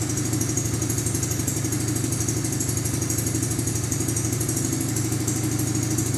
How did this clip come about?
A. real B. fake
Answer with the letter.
A